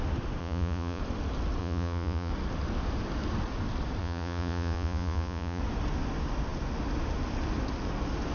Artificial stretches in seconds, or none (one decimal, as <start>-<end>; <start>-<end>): 0.4-1.0; 1.6-2.3; 4.0-5.6